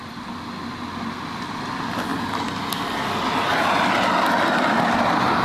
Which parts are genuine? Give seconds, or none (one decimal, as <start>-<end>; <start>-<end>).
0.0-5.4